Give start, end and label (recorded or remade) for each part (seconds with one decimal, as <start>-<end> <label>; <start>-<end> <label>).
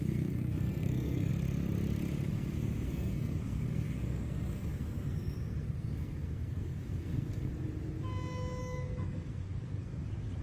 0.0-1.3 remade; 1.3-2.3 recorded; 2.3-7.5 remade; 7.5-8.6 recorded; 8.6-10.4 remade